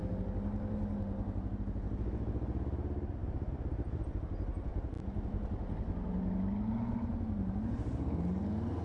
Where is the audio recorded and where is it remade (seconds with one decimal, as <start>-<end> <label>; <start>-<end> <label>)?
0.0-8.8 recorded